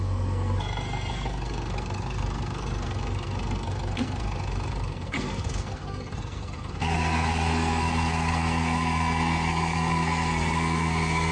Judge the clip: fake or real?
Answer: fake